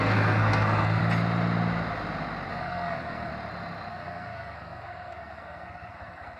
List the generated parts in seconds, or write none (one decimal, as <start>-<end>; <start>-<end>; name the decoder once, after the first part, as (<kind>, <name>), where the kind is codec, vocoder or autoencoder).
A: 0.0-1.0 (codec, SNAC); 2.5-3.3; 3.9-6.4